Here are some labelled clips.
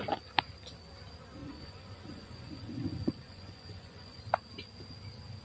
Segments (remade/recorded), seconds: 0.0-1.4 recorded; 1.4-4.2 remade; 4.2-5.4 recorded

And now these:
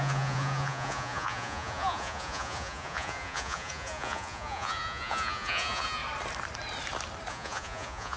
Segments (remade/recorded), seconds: 0.0-6.0 remade; 6.0-7.3 recorded; 7.3-8.2 remade

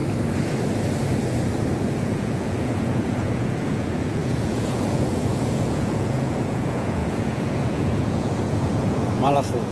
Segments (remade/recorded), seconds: 0.0-2.0 recorded; 2.0-9.7 remade

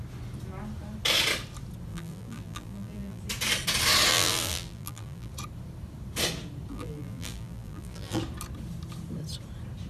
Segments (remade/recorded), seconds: 0.0-1.9 recorded; 1.9-3.2 remade; 3.2-4.1 recorded; 4.1-5.3 remade; 5.3-6.7 recorded; 6.7-8.2 remade; 8.2-9.9 recorded